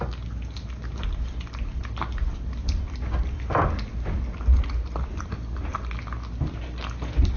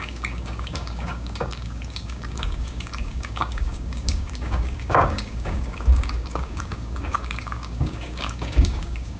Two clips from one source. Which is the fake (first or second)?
second